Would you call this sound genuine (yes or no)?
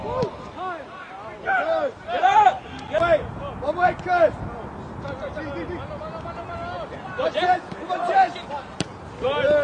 yes